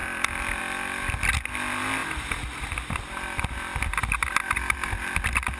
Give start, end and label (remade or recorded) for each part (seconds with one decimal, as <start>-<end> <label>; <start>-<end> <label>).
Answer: 0.0-0.6 remade; 0.6-2.0 recorded; 2.0-4.1 remade; 4.1-5.6 recorded